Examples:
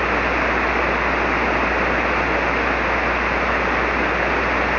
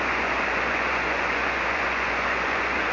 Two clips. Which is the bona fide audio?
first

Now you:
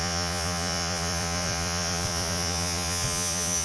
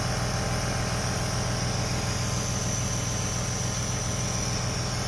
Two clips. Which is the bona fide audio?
second